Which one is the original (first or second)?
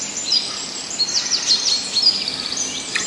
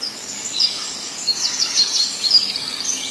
first